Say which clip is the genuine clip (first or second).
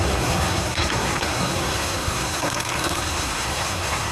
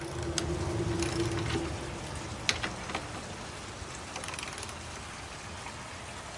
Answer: second